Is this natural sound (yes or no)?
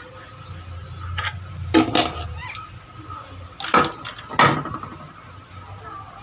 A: yes